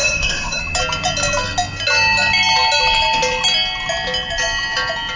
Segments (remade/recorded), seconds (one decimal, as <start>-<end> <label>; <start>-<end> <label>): 0.0-0.6 remade; 0.6-5.2 recorded